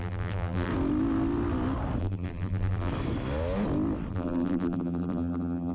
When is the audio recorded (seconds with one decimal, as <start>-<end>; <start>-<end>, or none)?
0.7-2.0; 2.9-4.1